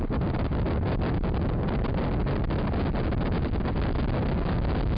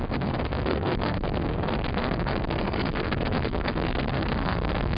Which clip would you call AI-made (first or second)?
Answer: second